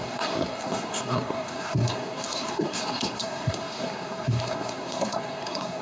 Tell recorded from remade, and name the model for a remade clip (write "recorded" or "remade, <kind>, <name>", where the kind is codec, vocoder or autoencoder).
remade, codec, SNAC